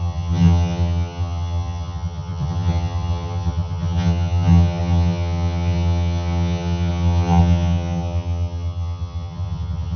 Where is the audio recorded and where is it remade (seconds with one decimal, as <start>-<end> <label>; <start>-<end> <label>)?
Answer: 0.0-10.0 remade

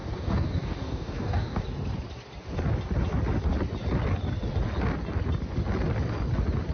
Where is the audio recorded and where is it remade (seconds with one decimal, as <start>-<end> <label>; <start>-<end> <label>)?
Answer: 0.0-1.6 remade; 1.6-6.7 recorded

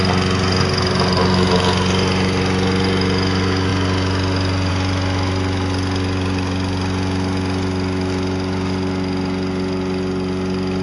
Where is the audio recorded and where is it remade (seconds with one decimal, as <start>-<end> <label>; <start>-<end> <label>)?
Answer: 0.0-10.8 recorded

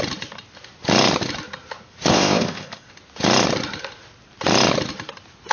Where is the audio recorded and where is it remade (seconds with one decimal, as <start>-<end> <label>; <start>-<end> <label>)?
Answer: 0.0-2.1 recorded; 2.1-2.9 remade; 2.9-5.5 recorded

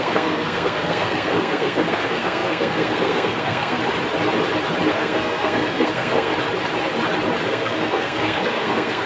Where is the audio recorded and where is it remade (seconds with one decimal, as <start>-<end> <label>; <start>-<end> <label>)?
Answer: 0.0-3.8 remade; 3.8-4.9 recorded; 4.9-6.3 remade; 6.3-7.4 recorded; 7.4-9.1 remade

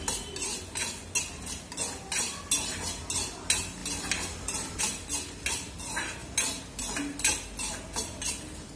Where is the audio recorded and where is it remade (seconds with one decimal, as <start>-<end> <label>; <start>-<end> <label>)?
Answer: 0.0-3.8 recorded; 3.8-4.8 remade; 4.8-8.8 recorded